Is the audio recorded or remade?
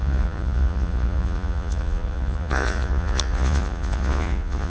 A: remade